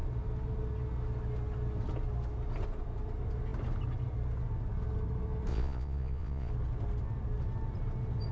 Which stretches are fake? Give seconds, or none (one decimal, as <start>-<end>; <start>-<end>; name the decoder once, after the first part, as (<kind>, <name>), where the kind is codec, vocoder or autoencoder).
5.5-6.5 (vocoder, Vocos)